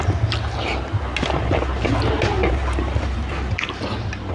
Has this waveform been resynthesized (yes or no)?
no